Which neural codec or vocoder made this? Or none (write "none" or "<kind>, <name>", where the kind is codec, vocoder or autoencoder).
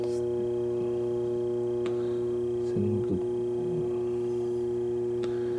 none